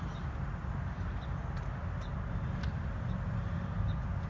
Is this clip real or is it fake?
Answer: real